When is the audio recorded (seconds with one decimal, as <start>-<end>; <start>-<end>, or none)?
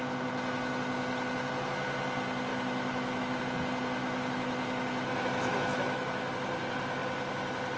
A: 0.0-2.5; 3.4-4.0; 6.3-7.8